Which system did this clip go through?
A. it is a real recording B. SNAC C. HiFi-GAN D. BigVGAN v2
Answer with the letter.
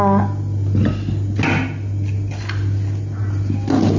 A